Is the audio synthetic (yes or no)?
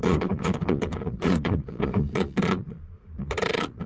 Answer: yes